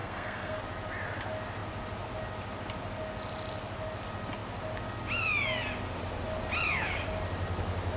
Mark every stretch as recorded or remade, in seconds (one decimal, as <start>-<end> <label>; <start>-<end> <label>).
0.0-0.6 remade; 0.6-8.0 recorded